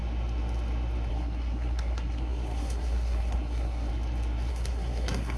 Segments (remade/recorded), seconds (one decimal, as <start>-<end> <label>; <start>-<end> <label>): 0.0-1.1 recorded; 1.1-3.9 remade; 3.9-4.5 recorded; 4.5-5.4 remade